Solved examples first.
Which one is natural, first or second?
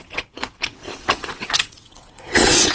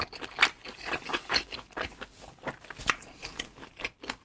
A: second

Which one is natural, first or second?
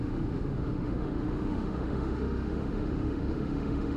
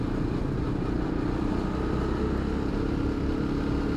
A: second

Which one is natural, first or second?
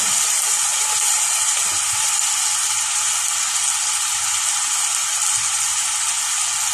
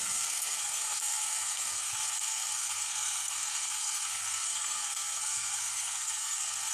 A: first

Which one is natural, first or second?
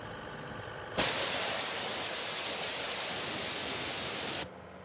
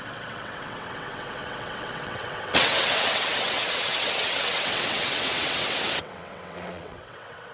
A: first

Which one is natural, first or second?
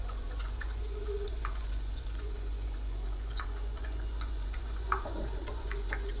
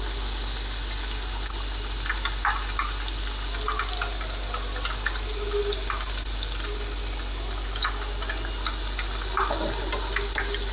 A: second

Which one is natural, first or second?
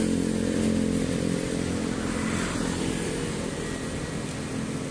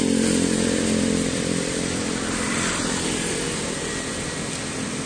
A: first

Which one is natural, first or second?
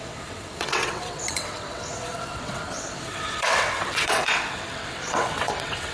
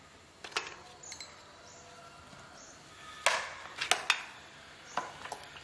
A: second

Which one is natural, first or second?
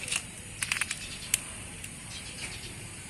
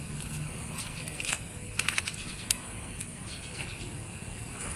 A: first